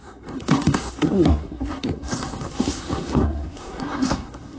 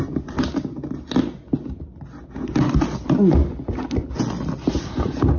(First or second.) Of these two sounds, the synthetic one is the first